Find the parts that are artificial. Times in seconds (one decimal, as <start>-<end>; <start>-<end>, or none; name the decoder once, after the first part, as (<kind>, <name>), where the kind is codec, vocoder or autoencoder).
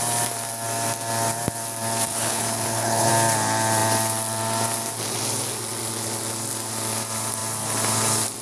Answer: 2.1-3.1 (codec, HILCodec)